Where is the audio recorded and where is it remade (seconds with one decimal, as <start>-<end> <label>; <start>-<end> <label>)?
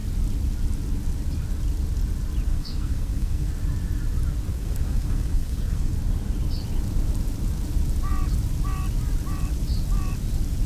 0.0-2.5 recorded; 2.5-3.5 remade; 3.5-4.5 recorded; 4.5-5.9 remade; 5.9-10.7 recorded